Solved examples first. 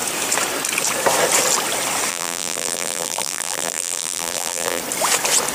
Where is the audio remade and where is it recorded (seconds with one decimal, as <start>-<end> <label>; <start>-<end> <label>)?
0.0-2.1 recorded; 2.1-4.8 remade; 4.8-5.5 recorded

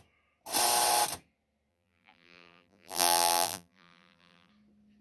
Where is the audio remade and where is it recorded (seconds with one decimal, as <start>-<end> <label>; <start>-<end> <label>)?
0.0-1.7 recorded; 1.7-4.5 remade; 4.5-5.0 recorded

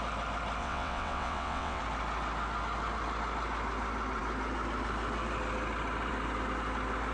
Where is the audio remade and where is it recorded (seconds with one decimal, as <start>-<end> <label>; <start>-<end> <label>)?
0.0-0.6 recorded; 0.6-1.8 remade; 1.8-7.1 recorded

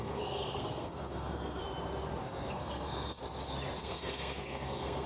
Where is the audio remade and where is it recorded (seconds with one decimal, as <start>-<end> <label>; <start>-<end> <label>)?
0.0-1.6 remade; 1.6-2.2 recorded; 2.2-3.2 remade; 3.2-3.8 recorded; 3.8-5.1 remade